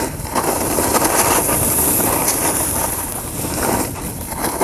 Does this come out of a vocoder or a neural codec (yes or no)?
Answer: no